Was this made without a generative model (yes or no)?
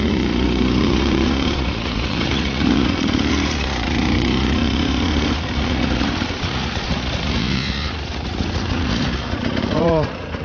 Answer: no